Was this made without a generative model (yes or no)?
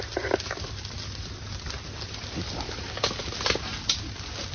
yes